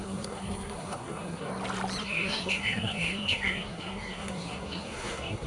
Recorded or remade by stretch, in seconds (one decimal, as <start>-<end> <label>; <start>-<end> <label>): 0.0-1.5 remade; 1.5-2.0 recorded; 2.0-5.5 remade